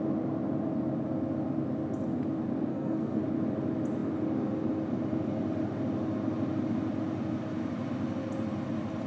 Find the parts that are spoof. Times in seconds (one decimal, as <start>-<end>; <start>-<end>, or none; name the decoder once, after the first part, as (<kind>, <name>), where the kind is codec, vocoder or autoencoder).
2.7-3.2 (codec, SNAC)